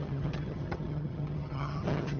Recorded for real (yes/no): no